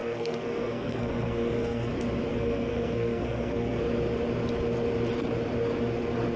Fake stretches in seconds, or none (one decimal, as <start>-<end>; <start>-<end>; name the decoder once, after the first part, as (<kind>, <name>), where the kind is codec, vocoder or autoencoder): 0.0-1.9 (codec, SNAC); 2.3-3.8